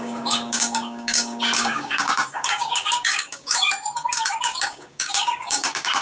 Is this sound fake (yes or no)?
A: yes